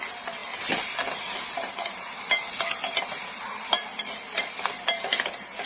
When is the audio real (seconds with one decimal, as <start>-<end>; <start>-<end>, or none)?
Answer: 0.0-5.7